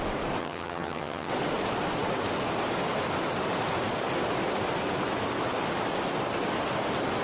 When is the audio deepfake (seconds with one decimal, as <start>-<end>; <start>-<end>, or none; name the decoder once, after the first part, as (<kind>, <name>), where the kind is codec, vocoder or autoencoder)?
0.4-1.3 (vocoder, HiFi-GAN)